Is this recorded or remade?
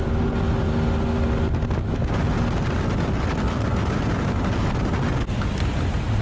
recorded